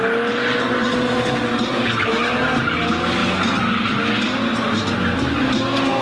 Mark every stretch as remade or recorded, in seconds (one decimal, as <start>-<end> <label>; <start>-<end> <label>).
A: 0.0-6.0 recorded